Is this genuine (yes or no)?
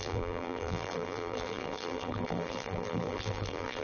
no